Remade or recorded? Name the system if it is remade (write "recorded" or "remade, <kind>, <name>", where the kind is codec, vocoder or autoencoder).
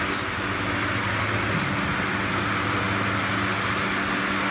recorded